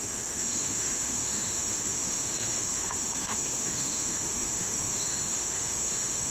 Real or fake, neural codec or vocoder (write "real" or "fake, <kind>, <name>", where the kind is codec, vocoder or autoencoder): fake, autoencoder, DAC-VAE